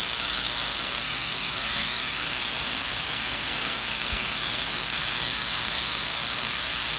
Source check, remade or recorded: remade